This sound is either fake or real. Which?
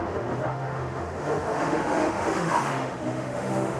fake